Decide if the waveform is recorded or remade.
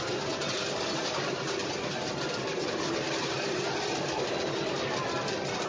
recorded